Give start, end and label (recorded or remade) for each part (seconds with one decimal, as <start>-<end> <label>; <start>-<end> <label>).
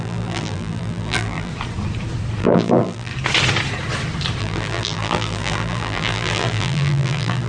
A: 0.0-1.5 remade; 1.5-2.4 recorded; 2.4-3.1 remade; 3.1-4.4 recorded; 4.4-7.5 remade